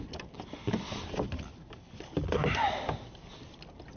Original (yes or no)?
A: yes